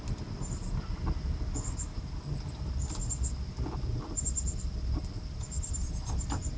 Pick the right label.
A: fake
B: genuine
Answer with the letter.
B